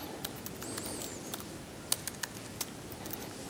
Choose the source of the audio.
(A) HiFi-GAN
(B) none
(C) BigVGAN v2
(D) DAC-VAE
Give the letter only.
B